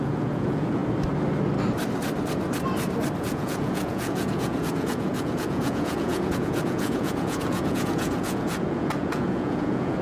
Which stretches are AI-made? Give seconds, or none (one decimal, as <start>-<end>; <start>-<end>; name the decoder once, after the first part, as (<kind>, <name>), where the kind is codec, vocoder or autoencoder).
0.0-0.8 (vocoder, Vocos); 3.2-10.0